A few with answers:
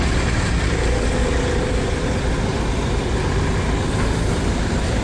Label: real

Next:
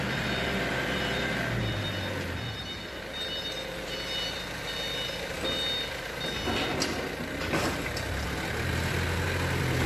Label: real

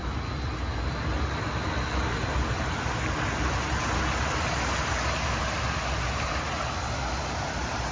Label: real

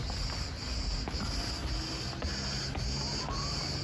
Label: real